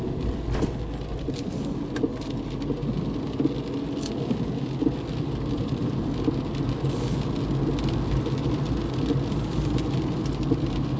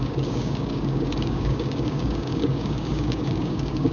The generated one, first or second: second